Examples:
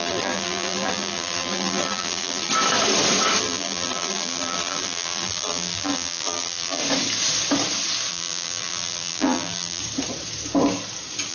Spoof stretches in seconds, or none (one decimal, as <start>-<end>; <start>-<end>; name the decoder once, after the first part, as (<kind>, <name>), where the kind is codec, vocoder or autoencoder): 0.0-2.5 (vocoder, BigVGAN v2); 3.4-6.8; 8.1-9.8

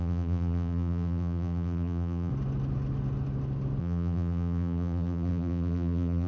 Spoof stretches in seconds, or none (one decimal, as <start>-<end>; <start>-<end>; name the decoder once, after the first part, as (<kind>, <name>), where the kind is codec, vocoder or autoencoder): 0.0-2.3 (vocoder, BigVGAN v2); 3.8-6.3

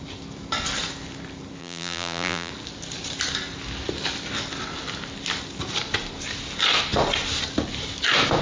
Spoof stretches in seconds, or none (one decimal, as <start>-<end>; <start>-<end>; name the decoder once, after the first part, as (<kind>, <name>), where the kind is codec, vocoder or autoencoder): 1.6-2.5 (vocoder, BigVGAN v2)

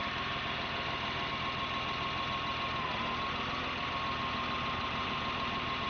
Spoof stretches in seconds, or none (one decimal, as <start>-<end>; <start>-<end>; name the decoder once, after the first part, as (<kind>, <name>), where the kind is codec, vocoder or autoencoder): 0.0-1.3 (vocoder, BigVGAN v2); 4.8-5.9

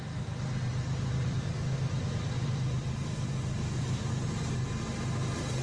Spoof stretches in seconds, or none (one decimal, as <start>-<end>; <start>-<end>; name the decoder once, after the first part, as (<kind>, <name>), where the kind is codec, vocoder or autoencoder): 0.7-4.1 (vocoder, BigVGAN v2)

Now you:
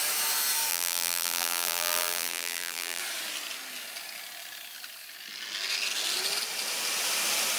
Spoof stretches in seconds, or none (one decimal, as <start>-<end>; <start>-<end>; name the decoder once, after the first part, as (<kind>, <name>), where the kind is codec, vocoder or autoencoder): 0.7-3.0 (vocoder, BigVGAN v2)

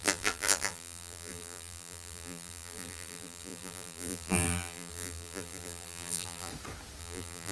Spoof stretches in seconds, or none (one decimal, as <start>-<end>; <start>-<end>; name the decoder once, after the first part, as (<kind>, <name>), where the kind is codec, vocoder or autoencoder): 0.0-6.5 (vocoder, BigVGAN v2); 7.0-7.5